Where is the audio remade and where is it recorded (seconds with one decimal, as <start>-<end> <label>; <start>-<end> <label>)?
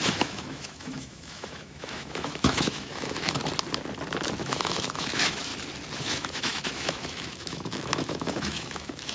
0.0-3.4 remade; 3.4-4.4 recorded; 4.4-5.5 remade; 5.5-6.0 recorded; 6.0-9.1 remade